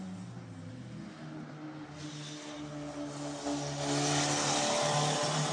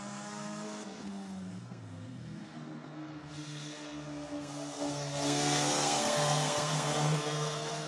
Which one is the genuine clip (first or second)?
first